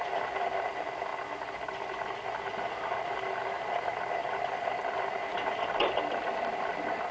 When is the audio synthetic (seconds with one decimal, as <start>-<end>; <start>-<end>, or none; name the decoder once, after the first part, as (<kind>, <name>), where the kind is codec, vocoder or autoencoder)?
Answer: 4.2-4.8 (vocoder, BigVGAN v2); 5.3-6.0